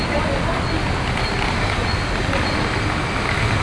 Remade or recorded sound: recorded